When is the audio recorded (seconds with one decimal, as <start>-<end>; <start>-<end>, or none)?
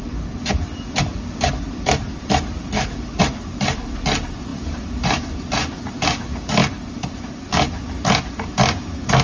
0.0-0.6; 3.2-4.5; 5.2-9.2